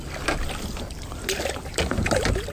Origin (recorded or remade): recorded